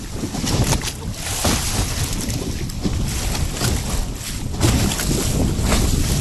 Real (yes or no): yes